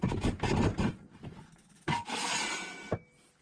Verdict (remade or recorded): recorded